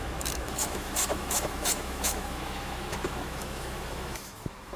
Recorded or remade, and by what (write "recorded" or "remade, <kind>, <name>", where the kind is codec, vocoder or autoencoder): remade, autoencoder, DAC-VAE